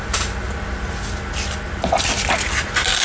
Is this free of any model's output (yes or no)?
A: yes